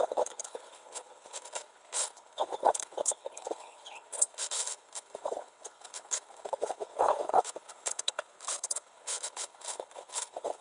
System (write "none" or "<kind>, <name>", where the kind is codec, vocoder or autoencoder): codec, HILCodec